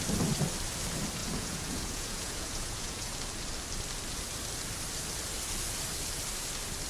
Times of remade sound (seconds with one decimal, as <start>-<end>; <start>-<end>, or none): 1.2-3.2